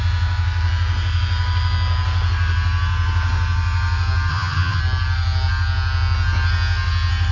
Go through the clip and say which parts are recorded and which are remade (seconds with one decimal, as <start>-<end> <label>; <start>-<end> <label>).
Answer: 0.0-4.3 recorded; 4.3-4.8 remade; 4.8-7.3 recorded